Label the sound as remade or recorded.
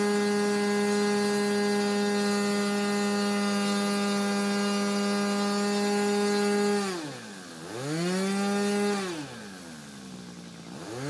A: recorded